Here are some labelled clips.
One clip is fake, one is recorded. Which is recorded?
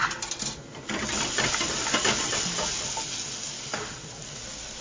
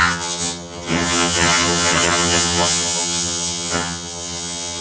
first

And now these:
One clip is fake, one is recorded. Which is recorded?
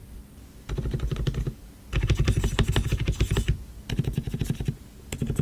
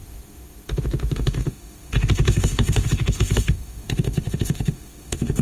first